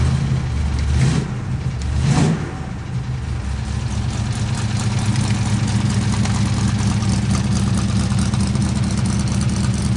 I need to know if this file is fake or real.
real